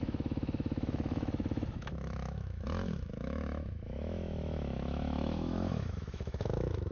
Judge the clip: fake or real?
fake